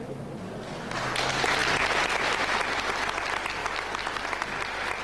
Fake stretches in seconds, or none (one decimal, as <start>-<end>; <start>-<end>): none